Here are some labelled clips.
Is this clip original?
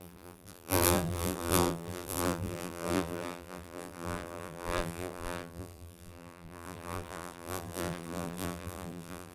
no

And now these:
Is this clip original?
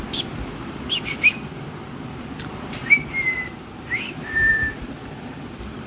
yes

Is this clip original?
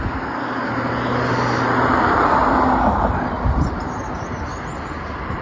yes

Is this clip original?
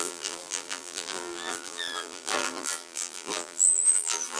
no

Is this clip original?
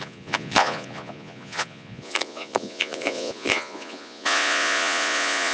no